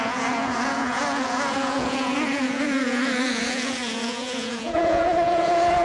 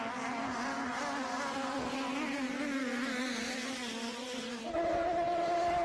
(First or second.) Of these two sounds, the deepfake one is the first